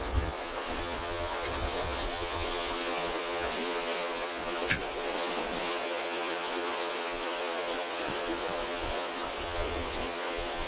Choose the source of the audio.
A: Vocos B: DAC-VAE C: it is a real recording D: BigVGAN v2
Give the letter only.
A